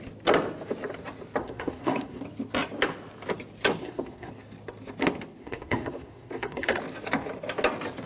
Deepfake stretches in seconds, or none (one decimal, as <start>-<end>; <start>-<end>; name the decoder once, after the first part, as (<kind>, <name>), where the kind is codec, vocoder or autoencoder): 1.4-2.2 (codec, SNAC); 3.8-4.3; 5.4-6.8